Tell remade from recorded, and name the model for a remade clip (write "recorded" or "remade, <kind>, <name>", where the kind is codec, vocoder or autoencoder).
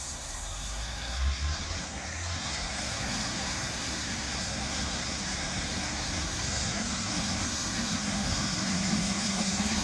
remade, codec, SNAC